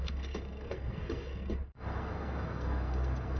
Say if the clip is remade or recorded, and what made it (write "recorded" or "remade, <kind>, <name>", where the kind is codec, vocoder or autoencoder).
remade, codec, SNAC